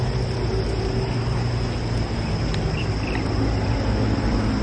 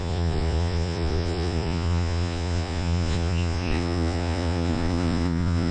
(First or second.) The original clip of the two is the first